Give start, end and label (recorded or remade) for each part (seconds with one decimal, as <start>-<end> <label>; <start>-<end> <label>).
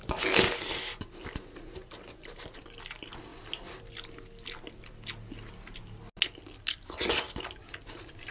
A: 0.0-8.3 recorded